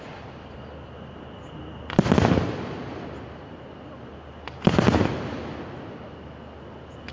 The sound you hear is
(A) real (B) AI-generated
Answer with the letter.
A